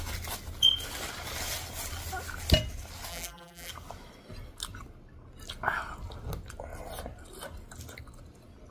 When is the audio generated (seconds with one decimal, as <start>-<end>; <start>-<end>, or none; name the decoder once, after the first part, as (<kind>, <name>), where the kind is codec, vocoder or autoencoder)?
3.1-3.7 (vocoder, BigVGAN v2)